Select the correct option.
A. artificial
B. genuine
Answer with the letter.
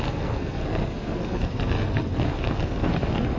A